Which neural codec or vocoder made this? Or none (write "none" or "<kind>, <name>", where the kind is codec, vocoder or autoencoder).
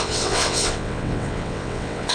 vocoder, WaveNeXt